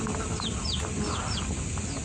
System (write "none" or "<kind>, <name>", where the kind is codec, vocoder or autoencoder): none